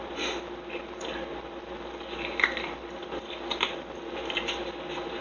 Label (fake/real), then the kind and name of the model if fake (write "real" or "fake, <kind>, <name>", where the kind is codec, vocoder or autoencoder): real